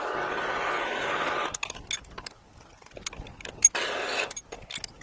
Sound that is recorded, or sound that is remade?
recorded